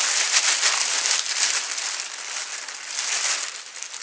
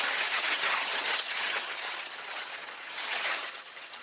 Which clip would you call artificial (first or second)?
second